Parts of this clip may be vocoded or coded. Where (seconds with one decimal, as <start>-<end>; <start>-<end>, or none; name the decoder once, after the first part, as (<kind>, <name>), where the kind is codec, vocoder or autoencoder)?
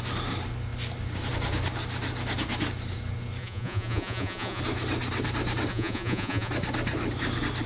3.4-4.6 (vocoder, Vocos); 5.7-6.5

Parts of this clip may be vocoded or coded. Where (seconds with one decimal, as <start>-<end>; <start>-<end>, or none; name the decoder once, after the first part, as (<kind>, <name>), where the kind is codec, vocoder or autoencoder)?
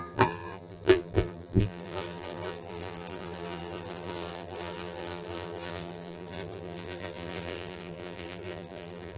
0.0-9.2 (vocoder, BigVGAN v2)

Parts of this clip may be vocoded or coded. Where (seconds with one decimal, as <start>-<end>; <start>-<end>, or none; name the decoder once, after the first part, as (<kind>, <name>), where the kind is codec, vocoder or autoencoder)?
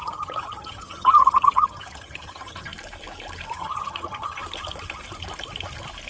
0.0-2.7 (vocoder, HiFi-GAN); 3.5-4.4